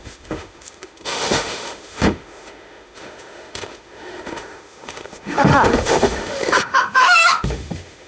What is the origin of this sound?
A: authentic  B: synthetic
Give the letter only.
B